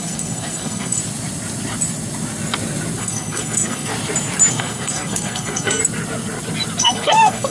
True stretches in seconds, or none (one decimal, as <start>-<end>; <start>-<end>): 1.0-3.0; 3.9-4.5; 5.8-6.8